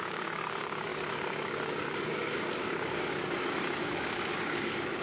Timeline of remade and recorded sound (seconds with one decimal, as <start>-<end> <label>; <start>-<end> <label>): 0.0-5.0 remade